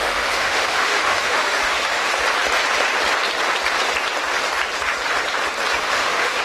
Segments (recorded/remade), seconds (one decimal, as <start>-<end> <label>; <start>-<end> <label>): 0.0-2.1 remade; 2.1-5.8 recorded; 5.8-6.4 remade